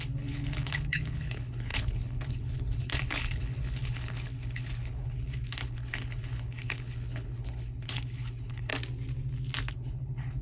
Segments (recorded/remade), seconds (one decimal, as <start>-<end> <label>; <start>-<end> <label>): 0.0-8.7 remade; 8.7-9.7 recorded; 9.7-10.4 remade